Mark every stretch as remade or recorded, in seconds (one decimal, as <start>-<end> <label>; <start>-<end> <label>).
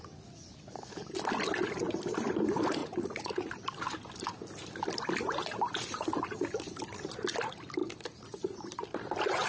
0.0-2.8 recorded; 2.8-3.5 remade; 3.5-9.5 recorded